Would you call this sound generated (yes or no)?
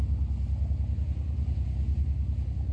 no